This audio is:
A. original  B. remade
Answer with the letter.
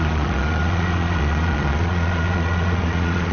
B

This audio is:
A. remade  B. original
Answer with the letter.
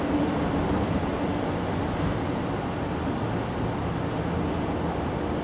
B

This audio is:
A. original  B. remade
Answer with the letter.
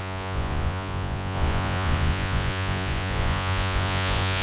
B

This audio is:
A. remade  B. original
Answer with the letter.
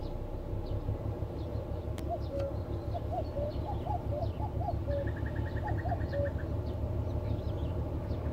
B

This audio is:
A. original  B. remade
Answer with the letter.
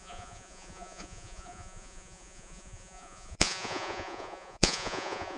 B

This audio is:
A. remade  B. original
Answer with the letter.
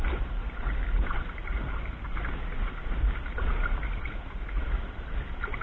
B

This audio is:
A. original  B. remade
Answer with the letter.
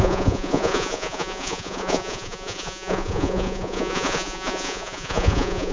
B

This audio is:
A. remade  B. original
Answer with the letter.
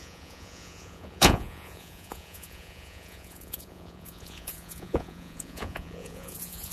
A